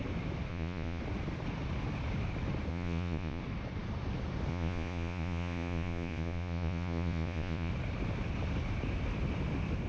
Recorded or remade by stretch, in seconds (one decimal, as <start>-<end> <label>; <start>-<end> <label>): 0.0-0.5 recorded; 0.5-1.0 remade; 1.0-2.7 recorded; 2.7-3.4 remade; 3.4-4.5 recorded; 4.5-7.7 remade; 7.7-9.9 recorded